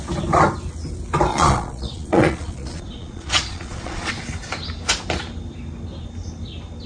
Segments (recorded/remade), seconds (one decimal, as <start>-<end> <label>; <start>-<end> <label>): 0.0-1.3 recorded; 1.3-4.1 remade; 4.1-6.9 recorded